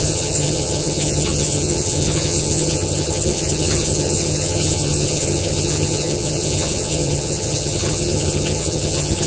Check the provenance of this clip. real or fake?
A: fake